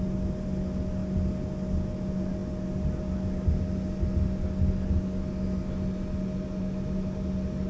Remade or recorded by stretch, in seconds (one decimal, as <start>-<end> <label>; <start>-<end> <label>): 0.0-7.7 recorded